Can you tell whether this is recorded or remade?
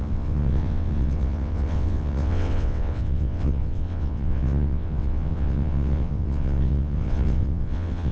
remade